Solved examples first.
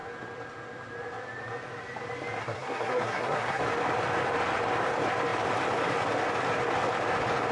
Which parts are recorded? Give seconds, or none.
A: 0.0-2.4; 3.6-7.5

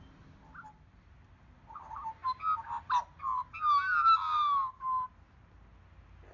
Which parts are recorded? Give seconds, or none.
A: 0.0-6.3

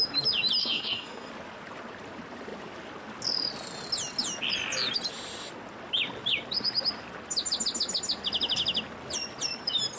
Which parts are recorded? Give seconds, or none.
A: 0.0-0.6; 1.3-10.0

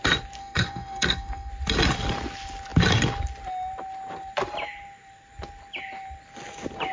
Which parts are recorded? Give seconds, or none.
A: 0.0-0.4; 1.5-6.9

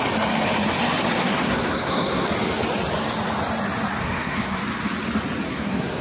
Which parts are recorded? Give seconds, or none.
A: 0.0-1.2; 2.3-4.0; 4.6-5.5